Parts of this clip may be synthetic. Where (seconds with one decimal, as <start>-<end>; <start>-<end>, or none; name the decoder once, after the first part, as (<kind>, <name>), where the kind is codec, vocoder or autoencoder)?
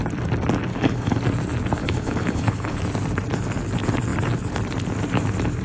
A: 0.7-1.2 (codec, HILCodec); 1.8-2.8